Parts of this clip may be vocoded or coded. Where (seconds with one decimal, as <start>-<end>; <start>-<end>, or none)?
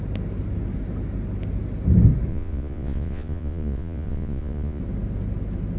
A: 2.3-4.8